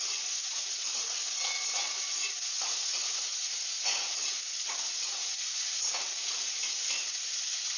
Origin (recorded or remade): remade